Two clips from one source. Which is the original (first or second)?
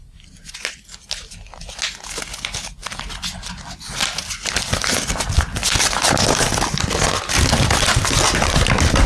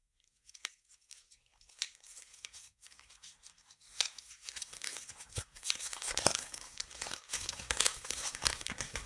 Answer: first